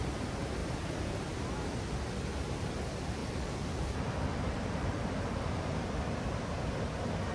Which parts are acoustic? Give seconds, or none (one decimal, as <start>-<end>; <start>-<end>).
0.0-0.6; 1.4-3.2; 5.8-7.3